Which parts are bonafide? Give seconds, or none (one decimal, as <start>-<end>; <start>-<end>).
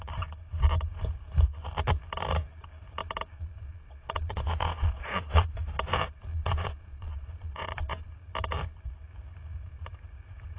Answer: 0.0-3.3; 5.6-6.3; 8.1-10.6